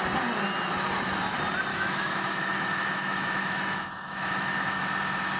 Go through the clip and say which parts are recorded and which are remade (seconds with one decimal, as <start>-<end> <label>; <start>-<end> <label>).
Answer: 0.0-1.7 recorded; 1.7-4.8 remade; 4.8-5.4 recorded